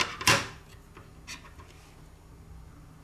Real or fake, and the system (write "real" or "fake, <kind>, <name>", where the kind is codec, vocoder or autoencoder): real